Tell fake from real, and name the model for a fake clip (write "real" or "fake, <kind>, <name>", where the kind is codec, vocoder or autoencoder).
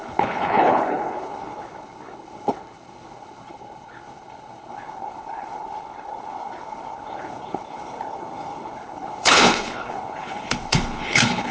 fake, codec, HILCodec